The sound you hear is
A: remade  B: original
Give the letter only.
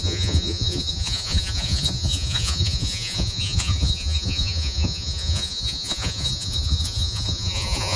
A